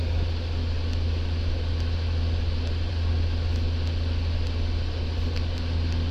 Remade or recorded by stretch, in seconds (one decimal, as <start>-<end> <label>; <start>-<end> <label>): 0.0-6.1 recorded